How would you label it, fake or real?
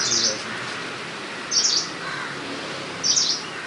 real